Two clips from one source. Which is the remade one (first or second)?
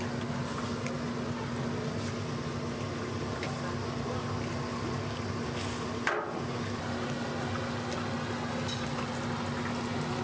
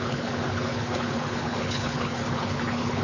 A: second